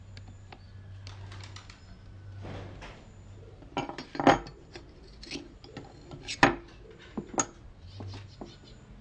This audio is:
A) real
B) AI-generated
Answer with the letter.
A